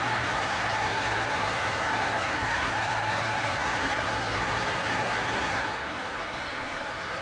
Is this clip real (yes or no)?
no